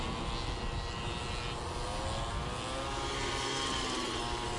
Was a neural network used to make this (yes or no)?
no